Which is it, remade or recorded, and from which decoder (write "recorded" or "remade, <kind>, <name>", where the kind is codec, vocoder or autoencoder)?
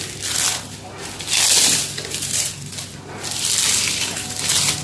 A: recorded